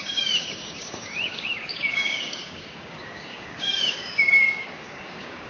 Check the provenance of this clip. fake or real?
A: fake